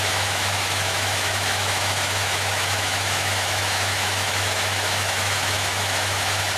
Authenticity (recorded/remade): remade